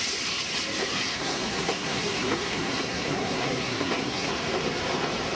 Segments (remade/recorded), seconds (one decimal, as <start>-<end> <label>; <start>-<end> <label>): 0.0-1.1 recorded; 1.1-4.3 remade; 4.3-5.3 recorded